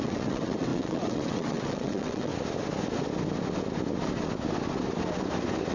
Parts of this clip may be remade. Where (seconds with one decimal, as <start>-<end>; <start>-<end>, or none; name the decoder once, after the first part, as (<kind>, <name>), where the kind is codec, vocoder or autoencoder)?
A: 0.0-2.3 (vocoder, WaveNeXt)